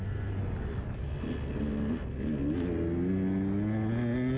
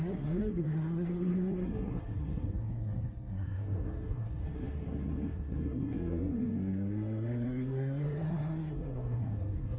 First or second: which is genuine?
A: first